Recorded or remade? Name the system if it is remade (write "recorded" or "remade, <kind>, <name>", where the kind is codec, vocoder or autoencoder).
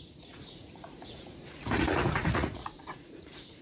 remade, vocoder, Vocos